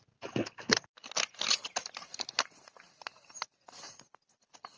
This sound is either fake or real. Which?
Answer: real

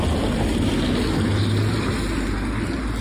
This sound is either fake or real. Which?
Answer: real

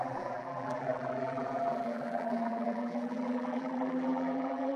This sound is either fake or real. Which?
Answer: fake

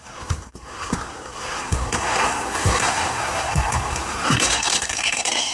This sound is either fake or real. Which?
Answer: fake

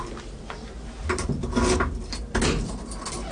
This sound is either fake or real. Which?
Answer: real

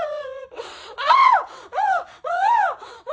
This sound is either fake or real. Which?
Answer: fake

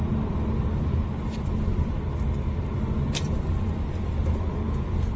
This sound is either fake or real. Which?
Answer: real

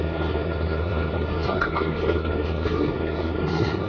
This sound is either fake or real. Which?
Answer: fake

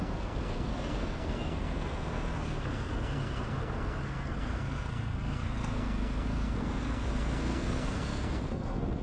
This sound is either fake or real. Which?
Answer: fake